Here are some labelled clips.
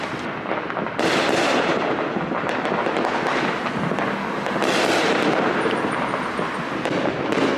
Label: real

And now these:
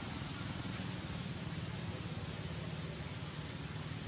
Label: real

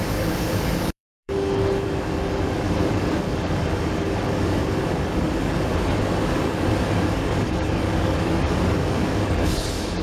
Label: fake